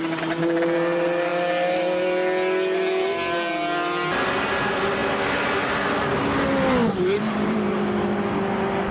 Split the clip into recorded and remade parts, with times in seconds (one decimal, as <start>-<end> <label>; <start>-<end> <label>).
0.0-6.8 recorded; 6.8-7.8 remade; 7.8-8.9 recorded